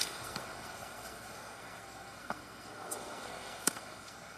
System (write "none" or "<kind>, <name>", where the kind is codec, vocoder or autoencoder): codec, SNAC